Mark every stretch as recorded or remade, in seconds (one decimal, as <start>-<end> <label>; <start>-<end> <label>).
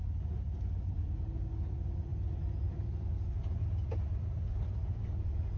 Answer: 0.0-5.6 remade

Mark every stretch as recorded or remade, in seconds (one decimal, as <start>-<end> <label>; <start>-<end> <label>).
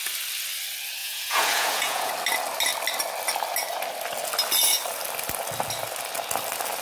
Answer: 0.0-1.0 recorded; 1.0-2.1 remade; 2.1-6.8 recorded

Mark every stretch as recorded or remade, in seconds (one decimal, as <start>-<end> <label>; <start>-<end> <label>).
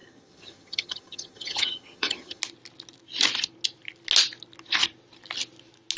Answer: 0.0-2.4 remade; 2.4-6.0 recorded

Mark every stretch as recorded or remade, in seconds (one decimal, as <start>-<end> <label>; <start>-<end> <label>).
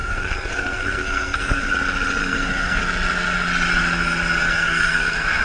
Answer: 0.0-1.7 remade; 1.7-2.2 recorded; 2.2-2.8 remade; 2.8-4.4 recorded; 4.4-5.4 remade